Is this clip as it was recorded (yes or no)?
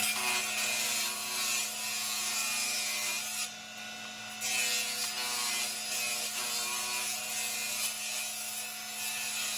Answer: yes